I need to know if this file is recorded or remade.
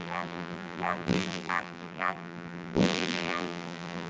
remade